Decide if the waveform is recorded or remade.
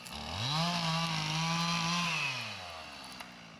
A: recorded